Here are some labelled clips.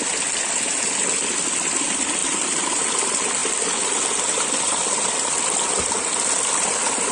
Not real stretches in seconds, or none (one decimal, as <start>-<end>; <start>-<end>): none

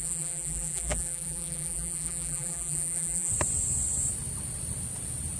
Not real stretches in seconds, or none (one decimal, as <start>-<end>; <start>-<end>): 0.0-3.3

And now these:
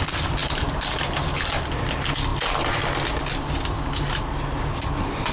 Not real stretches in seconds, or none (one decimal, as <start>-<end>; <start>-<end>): 0.4-1.0

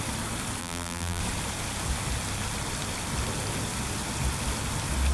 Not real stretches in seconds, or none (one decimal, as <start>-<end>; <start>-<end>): 0.6-1.2

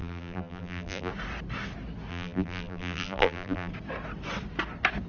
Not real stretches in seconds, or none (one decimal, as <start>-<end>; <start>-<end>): 0.0-1.1; 2.1-3.7

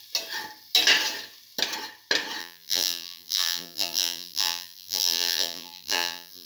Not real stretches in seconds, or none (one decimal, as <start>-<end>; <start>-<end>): 2.4-6.5